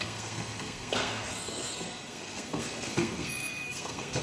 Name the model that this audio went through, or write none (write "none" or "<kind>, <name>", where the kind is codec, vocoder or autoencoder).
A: codec, SNAC